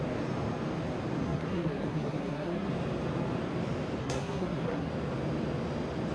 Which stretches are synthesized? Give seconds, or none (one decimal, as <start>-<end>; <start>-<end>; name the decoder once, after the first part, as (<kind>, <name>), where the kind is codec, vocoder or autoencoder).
1.2-2.7 (codec, SNAC); 4.0-4.9